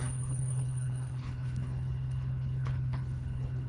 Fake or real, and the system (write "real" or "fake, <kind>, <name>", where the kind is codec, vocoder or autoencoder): fake, codec, HILCodec